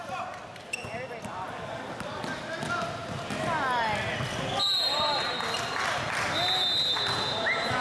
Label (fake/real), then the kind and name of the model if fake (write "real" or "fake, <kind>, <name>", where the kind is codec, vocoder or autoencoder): real